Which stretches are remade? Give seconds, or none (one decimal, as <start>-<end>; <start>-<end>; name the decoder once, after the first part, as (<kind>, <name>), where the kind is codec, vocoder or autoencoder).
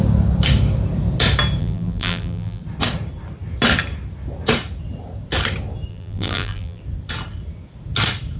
1.6-2.6 (vocoder, BigVGAN v2); 5.9-6.8